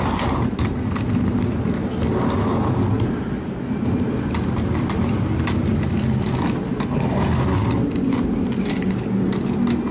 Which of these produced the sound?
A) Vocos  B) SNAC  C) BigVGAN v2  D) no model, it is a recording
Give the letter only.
D